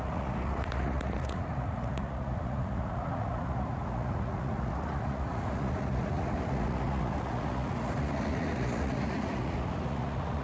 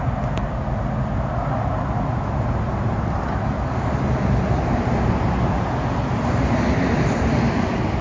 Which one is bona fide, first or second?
second